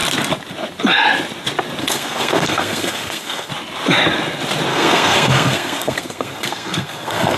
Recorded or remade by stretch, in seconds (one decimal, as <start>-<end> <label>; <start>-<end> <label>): 0.0-1.8 recorded; 1.8-3.5 remade; 3.5-4.7 recorded; 4.7-7.4 remade